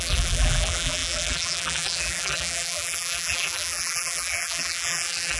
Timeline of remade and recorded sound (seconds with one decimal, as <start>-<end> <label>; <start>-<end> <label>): 0.0-5.4 remade

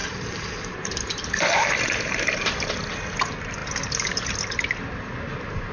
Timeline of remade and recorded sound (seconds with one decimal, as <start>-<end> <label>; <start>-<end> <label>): 0.0-2.5 remade; 2.5-5.7 recorded

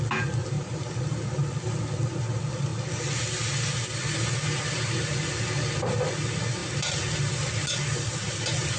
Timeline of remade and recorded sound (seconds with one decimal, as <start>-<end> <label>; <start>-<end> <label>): 0.0-0.4 recorded; 0.4-0.9 remade; 0.9-8.8 recorded

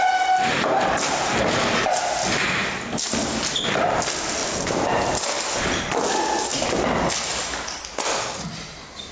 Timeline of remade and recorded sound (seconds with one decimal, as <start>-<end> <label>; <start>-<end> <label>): 0.0-4.4 recorded; 4.4-5.4 remade; 5.4-9.1 recorded

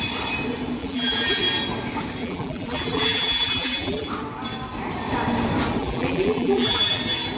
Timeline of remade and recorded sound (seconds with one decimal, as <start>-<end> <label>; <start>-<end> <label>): 0.0-0.8 recorded; 0.8-1.4 remade; 1.4-2.2 recorded; 2.2-4.1 remade; 4.1-5.8 recorded; 5.8-7.0 remade; 7.0-7.4 recorded